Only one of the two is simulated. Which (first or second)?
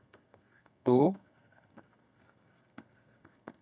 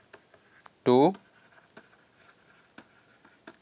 first